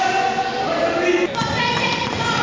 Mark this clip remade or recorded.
recorded